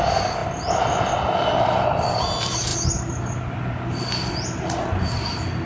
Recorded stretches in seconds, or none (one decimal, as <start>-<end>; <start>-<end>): 0.4-1.8; 2.7-5.7